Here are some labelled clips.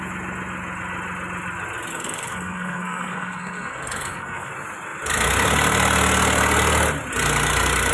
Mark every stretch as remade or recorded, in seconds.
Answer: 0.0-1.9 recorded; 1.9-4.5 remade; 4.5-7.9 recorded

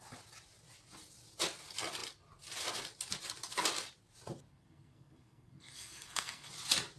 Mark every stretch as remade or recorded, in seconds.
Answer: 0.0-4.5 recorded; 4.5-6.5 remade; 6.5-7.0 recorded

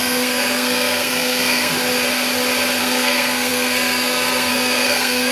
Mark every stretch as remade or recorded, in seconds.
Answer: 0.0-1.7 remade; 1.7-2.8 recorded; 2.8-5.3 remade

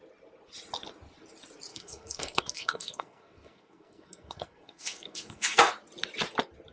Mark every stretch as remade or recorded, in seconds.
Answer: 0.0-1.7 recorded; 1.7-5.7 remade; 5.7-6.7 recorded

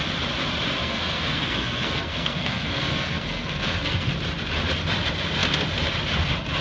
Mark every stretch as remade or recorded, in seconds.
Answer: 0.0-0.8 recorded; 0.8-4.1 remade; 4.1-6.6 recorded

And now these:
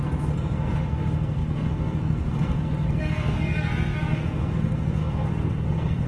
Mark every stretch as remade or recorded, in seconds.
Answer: 0.0-6.1 remade